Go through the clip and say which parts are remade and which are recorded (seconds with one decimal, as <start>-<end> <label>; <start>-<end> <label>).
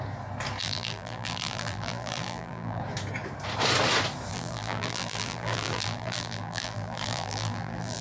0.0-0.6 recorded; 0.6-2.8 remade; 2.8-4.3 recorded; 4.3-8.0 remade